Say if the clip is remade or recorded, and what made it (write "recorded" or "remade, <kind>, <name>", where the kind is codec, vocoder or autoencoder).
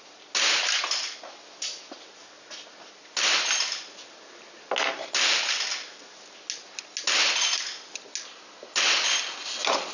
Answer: recorded